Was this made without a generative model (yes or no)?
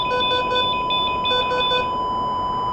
yes